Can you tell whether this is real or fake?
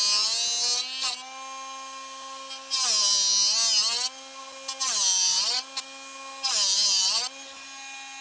real